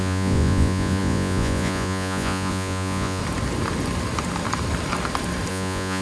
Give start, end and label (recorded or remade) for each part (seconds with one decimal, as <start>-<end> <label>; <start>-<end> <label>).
0.0-3.2 remade; 3.2-5.5 recorded; 5.5-6.0 remade